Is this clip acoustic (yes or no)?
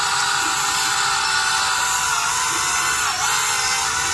yes